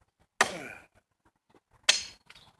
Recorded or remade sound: recorded